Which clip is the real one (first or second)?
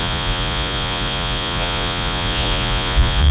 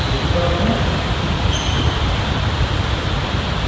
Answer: second